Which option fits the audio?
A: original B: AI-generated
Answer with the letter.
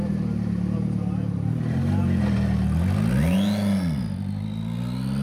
A